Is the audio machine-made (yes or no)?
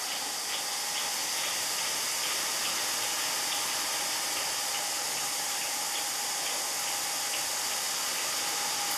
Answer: no